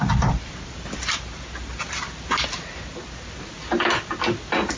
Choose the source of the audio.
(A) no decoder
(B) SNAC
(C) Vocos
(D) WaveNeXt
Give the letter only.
A